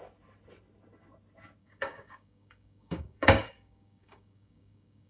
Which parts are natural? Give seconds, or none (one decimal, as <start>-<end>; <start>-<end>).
0.0-1.6